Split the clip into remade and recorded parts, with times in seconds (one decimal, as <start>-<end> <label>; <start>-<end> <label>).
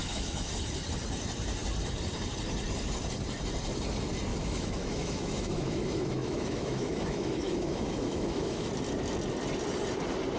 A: 0.0-0.5 remade; 0.5-4.3 recorded; 4.3-8.7 remade; 8.7-10.4 recorded